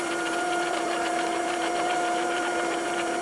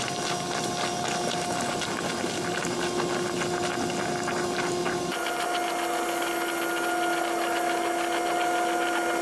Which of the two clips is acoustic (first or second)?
second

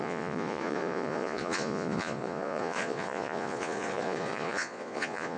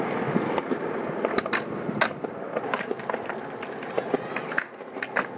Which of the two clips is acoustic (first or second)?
second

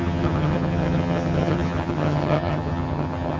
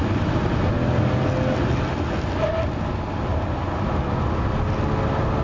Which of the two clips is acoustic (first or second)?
second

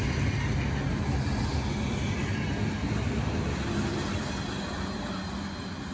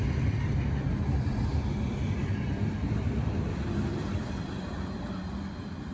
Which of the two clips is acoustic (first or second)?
first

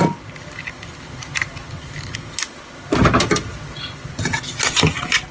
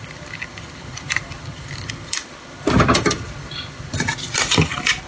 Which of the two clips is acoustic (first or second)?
first